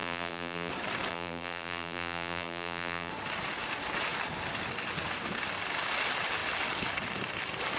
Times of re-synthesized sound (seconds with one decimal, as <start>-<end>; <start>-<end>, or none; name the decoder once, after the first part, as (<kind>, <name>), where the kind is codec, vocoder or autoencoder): 0.0-0.7 (vocoder, BigVGAN v2); 1.1-3.1